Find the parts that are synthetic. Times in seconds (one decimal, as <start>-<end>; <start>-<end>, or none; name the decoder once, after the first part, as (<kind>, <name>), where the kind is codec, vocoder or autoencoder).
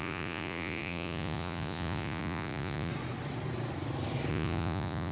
0.0-2.9 (vocoder, Vocos); 4.3-5.1